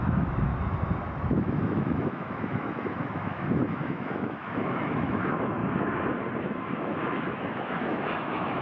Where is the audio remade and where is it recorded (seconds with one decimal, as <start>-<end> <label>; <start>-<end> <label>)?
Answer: 0.0-0.5 remade; 0.5-1.3 recorded; 1.3-5.6 remade; 5.6-6.4 recorded; 6.4-8.6 remade